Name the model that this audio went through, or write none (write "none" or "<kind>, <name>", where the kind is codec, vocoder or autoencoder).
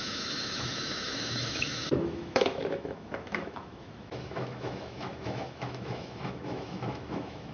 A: autoencoder, DAC-VAE